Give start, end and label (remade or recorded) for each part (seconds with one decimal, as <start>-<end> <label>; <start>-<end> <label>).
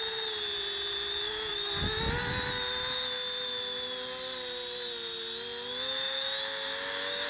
0.0-7.3 recorded